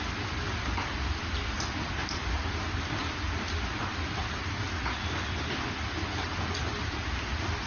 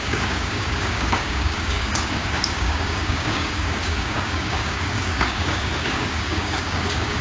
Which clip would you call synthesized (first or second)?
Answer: second